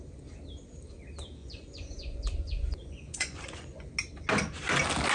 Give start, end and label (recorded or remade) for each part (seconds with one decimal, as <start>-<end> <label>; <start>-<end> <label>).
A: 0.0-1.4 recorded; 1.4-3.9 remade; 3.9-5.1 recorded